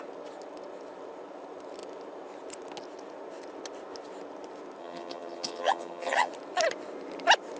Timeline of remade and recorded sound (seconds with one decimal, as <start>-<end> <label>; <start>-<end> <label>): 0.0-4.8 recorded; 4.8-6.3 remade; 6.3-7.6 recorded